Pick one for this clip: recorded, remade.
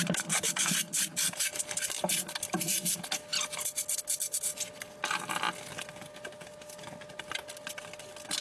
recorded